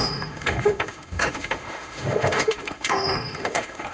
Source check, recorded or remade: remade